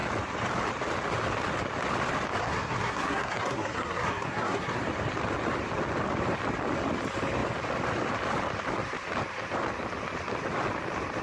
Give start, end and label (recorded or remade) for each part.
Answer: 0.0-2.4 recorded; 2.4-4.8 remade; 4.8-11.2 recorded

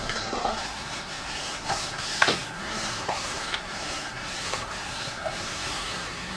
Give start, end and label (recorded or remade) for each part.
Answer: 0.0-6.4 remade

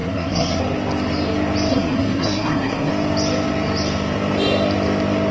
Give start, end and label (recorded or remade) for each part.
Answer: 0.0-0.6 remade; 0.6-1.7 recorded; 1.7-2.9 remade; 2.9-5.3 recorded